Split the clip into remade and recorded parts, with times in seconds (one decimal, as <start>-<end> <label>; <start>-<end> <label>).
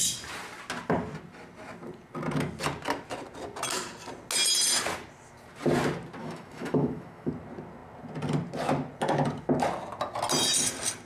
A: 0.0-6.2 recorded; 6.2-7.3 remade; 7.3-11.1 recorded